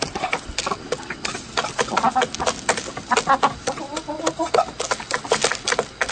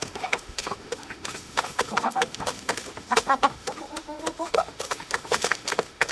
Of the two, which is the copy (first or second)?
second